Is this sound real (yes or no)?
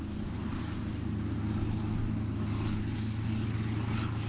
yes